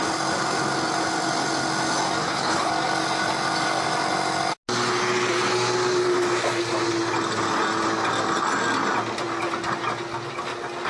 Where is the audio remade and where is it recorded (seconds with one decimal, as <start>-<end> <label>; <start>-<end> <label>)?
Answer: 0.0-2.2 recorded; 2.2-2.7 remade; 2.7-10.9 recorded